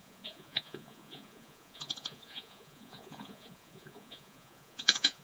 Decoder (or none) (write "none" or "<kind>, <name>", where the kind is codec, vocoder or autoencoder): vocoder, Vocos